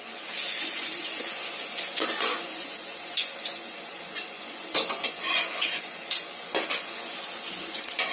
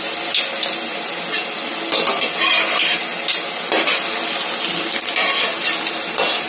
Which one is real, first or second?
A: second